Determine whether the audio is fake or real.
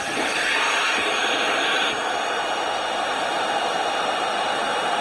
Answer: real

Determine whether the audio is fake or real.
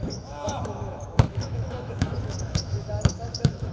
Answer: fake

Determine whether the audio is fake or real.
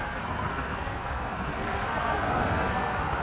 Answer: fake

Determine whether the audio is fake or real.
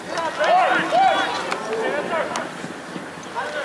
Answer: real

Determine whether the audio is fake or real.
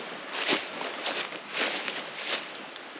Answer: real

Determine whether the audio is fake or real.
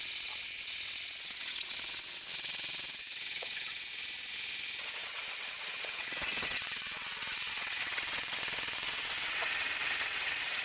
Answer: fake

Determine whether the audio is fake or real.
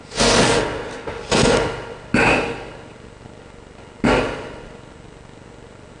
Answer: real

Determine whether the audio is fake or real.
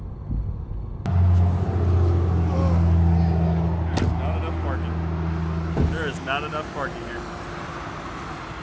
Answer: real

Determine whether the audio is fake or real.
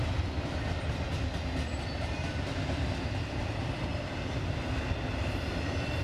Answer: real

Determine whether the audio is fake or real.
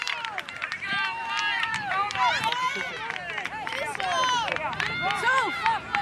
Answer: real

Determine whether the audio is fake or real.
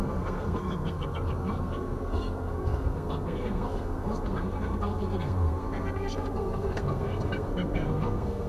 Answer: fake